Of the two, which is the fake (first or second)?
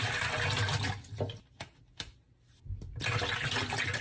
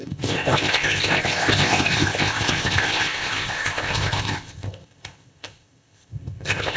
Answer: second